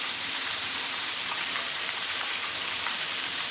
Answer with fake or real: fake